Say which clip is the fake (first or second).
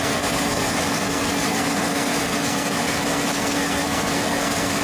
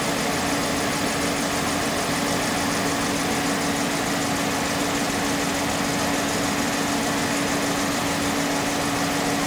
first